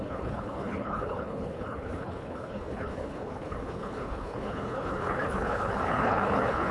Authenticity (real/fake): fake